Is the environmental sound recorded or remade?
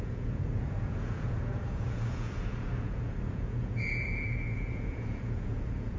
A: remade